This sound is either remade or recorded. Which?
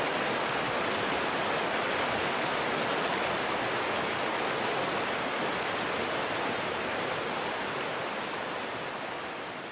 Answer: recorded